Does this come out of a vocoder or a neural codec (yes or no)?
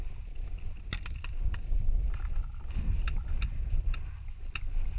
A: no